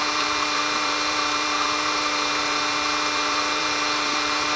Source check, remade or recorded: remade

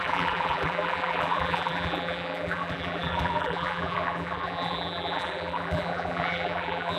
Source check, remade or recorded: remade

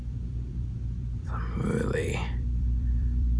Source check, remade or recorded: remade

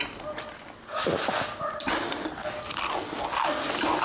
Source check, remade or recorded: recorded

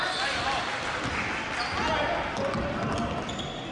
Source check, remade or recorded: recorded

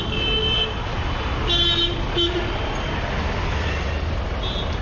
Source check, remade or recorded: recorded